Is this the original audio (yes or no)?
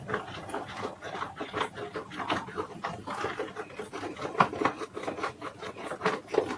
yes